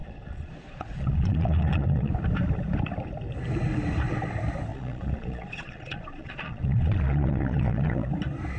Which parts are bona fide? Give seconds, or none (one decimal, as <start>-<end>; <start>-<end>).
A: 2.1-4.7; 8.1-8.6